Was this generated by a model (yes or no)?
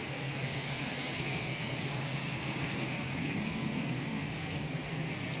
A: yes